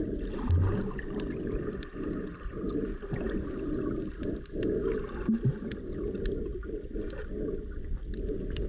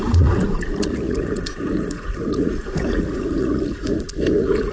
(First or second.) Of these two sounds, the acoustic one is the first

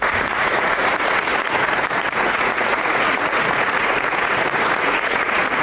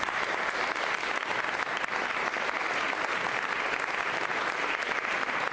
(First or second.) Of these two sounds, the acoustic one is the second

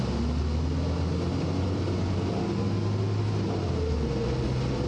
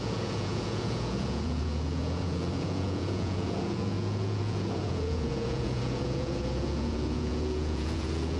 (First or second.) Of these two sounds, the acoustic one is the first